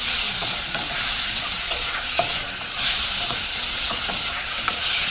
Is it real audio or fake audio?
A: fake